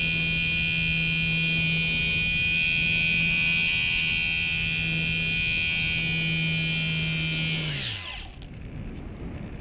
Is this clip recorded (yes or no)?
yes